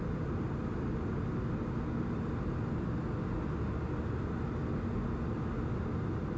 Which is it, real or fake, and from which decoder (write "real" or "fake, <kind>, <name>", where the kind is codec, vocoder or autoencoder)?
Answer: real